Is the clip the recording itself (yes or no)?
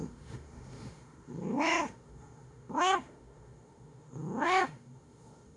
no